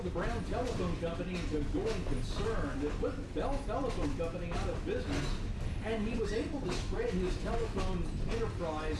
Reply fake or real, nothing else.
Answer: real